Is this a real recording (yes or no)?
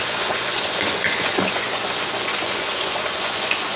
no